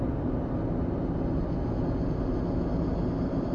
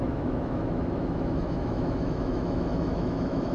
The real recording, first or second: first